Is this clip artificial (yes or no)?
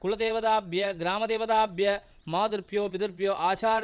yes